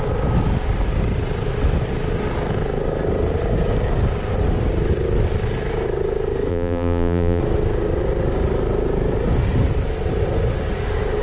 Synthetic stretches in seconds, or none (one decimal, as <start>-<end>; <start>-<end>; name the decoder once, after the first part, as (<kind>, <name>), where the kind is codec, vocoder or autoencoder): 6.5-7.4 (vocoder, BigVGAN v2)

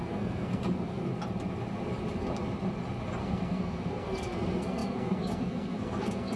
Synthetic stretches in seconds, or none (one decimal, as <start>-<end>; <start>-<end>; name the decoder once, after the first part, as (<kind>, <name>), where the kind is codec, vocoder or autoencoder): 0.0-1.1 (codec, SNAC); 3.2-6.4

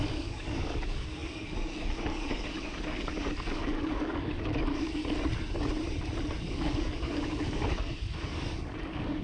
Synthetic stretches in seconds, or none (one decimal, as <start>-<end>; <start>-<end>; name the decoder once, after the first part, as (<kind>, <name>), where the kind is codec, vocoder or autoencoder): 0.0-5.0 (codec, DAC); 6.5-9.2

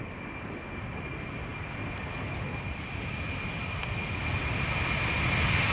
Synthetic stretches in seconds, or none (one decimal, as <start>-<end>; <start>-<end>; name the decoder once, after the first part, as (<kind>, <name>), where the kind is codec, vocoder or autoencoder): none

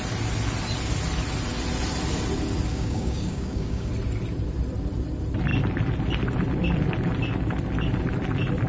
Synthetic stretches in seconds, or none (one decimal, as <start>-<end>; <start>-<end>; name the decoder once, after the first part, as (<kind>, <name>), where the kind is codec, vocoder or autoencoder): 2.7-3.9 (codec, DAC)

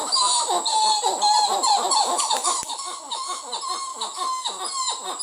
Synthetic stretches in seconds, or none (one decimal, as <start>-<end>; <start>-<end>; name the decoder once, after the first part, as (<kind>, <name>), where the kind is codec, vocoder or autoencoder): 0.0-0.6 (autoencoder, DAC-VAE); 2.0-3.5; 3.9-4.6

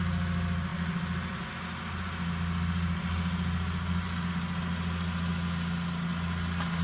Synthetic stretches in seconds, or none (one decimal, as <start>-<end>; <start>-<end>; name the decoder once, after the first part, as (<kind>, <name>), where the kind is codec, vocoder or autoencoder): none